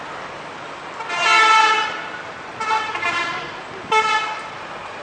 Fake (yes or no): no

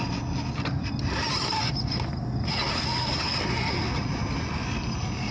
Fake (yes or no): no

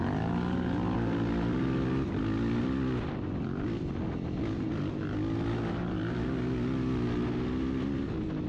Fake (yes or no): no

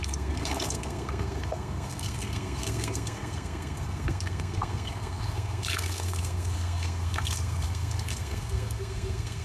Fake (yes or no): yes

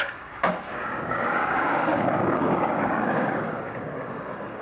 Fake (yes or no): yes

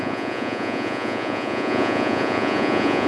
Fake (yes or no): yes